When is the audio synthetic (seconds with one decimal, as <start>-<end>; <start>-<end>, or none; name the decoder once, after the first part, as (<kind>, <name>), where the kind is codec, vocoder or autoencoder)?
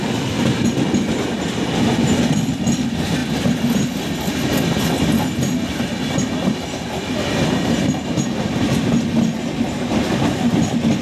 none